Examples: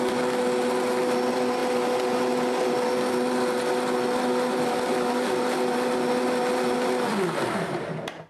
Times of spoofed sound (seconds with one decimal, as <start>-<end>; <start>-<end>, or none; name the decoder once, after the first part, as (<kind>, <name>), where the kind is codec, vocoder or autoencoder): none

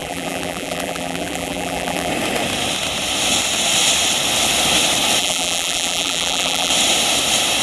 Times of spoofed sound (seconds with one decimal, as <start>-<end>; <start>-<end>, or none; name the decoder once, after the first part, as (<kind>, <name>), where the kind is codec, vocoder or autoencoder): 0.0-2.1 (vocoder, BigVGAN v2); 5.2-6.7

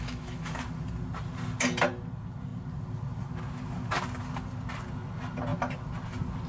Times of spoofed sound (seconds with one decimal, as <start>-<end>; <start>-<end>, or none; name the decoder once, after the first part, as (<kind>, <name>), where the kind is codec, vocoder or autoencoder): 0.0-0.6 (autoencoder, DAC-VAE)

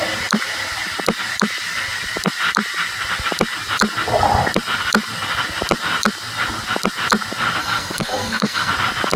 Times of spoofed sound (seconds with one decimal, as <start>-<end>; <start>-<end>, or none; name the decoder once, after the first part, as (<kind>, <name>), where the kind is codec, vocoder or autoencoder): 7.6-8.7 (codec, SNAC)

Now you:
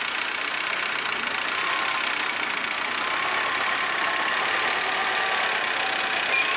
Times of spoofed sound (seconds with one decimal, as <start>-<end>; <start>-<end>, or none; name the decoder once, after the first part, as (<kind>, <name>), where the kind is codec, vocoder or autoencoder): none

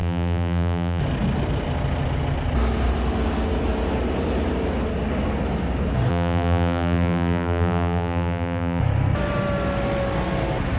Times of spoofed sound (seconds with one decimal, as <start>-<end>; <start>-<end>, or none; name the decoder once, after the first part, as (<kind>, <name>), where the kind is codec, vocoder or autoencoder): 0.0-1.0 (vocoder, BigVGAN v2); 6.1-8.8

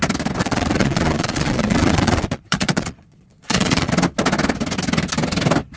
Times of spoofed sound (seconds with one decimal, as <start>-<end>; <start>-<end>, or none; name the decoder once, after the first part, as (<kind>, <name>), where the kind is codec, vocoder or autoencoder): 0.4-3.9 (vocoder, Vocos)